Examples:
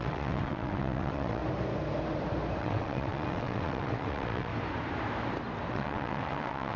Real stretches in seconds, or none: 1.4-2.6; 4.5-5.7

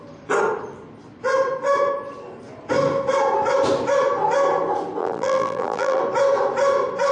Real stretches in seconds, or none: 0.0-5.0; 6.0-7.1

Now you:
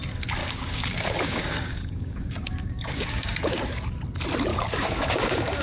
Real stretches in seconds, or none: 0.0-0.4; 3.8-4.5

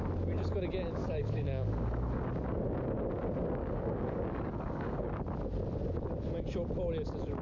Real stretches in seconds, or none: 0.0-1.0; 2.2-3.6; 5.2-7.4

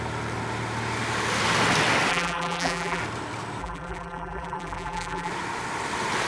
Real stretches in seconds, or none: 0.0-2.1; 3.0-3.6; 5.3-6.3